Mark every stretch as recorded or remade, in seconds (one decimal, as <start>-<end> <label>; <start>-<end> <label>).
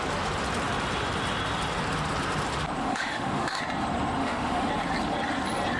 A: 0.0-2.8 recorded; 2.8-3.6 remade; 3.6-4.2 recorded; 4.2-4.7 remade; 4.7-5.8 recorded